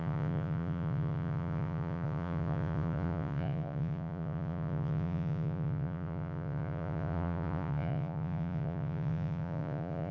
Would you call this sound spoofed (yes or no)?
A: yes